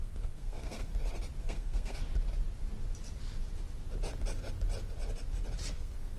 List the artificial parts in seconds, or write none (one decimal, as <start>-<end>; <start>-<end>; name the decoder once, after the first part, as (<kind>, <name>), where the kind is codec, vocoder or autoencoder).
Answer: 0.0-0.9 (codec, SNAC); 1.4-2.0; 5.7-6.2